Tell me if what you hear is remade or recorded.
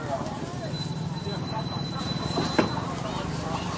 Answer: recorded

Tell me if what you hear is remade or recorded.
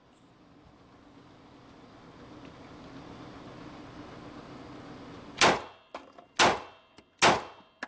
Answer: recorded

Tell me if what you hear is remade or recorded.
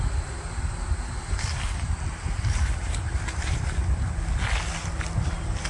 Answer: recorded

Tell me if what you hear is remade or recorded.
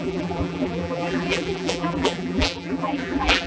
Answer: remade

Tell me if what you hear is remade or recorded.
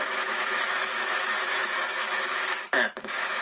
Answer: remade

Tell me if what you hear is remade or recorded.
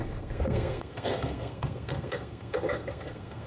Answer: remade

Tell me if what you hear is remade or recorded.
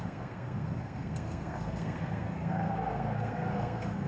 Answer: remade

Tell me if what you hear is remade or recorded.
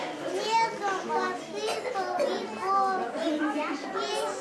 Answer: recorded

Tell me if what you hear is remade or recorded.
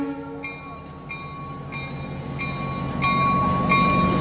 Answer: recorded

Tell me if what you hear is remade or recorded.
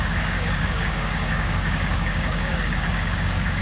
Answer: remade